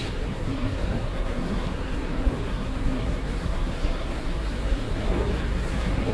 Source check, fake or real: fake